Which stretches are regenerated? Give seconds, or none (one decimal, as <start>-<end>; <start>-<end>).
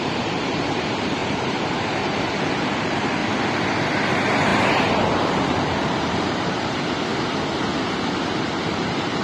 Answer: 0.0-3.2; 4.1-7.1; 8.4-9.2